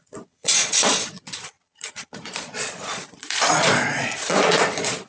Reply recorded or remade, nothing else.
remade